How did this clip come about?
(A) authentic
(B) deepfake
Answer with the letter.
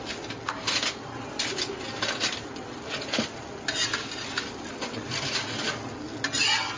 A